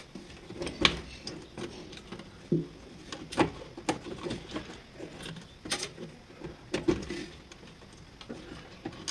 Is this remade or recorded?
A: recorded